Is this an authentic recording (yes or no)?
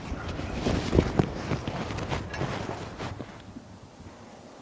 yes